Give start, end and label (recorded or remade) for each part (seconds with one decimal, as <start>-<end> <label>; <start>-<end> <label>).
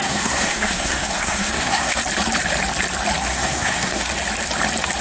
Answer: 0.0-2.0 remade; 2.0-3.3 recorded; 3.3-4.1 remade; 4.1-5.0 recorded